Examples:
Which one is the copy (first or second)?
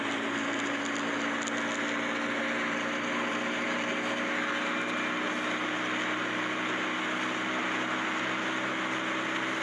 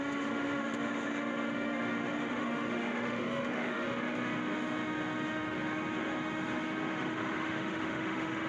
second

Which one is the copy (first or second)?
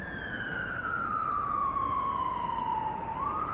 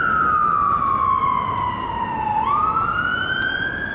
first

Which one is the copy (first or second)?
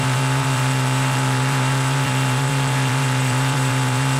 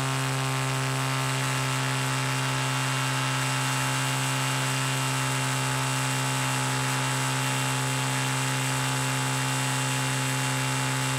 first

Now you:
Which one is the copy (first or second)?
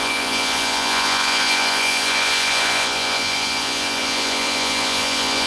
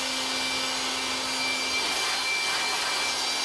first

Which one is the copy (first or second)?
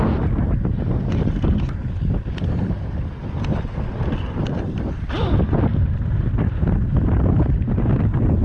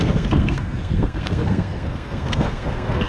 second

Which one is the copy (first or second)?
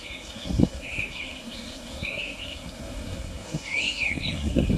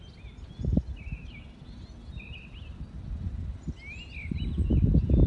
first